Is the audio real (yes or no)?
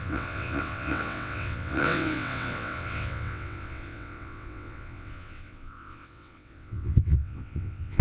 no